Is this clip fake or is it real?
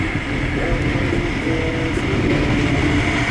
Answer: real